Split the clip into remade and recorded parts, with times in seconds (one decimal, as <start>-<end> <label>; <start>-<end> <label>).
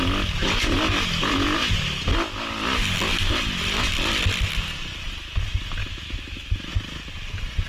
0.0-5.8 recorded; 5.8-6.7 remade; 6.7-7.7 recorded